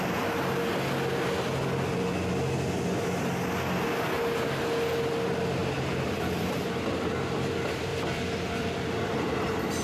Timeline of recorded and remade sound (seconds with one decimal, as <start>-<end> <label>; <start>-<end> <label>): 0.0-5.6 recorded; 5.6-6.9 remade; 6.9-7.9 recorded; 7.9-9.3 remade; 9.3-9.8 recorded